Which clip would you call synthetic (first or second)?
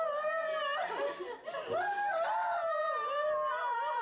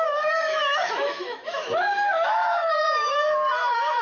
second